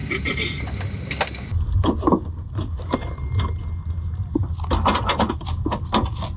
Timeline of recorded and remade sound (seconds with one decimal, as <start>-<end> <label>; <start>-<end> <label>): 0.0-0.7 remade; 0.7-6.4 recorded